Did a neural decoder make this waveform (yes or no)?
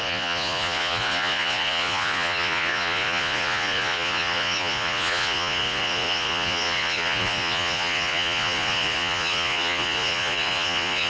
yes